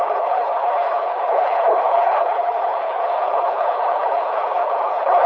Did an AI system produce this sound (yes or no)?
yes